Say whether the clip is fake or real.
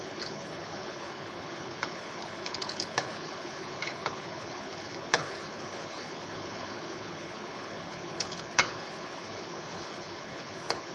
fake